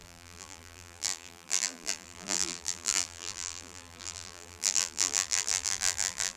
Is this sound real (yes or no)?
no